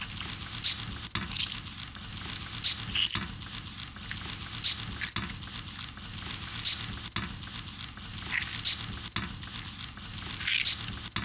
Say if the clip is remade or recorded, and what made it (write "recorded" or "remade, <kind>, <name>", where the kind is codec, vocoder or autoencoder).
recorded